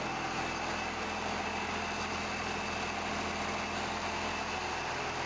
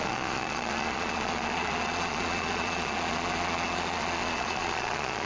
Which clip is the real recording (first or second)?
first